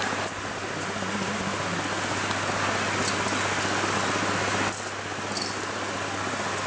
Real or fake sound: real